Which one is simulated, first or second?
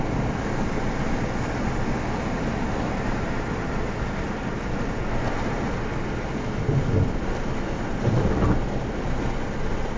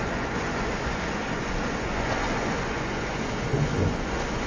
second